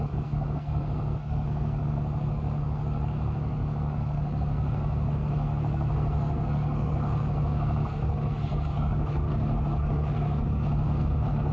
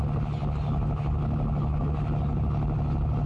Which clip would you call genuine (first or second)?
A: second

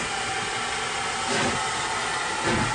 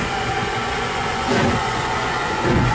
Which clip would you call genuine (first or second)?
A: first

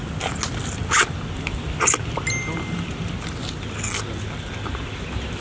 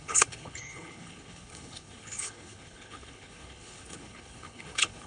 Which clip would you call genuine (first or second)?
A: first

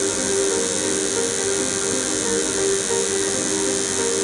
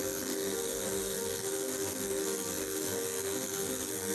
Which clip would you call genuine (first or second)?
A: first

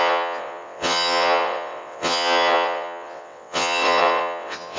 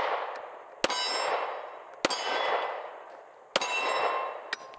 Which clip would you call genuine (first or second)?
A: second